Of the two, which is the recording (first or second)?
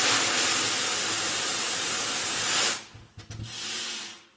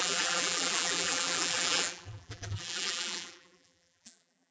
first